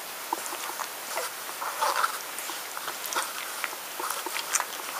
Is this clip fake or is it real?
real